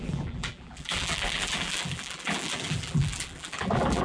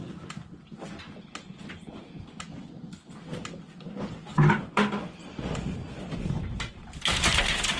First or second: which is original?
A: second